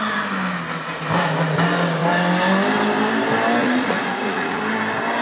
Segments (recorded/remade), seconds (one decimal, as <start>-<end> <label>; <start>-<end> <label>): 0.0-3.6 recorded; 3.6-4.6 remade; 4.6-5.2 recorded